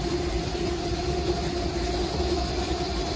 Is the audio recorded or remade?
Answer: recorded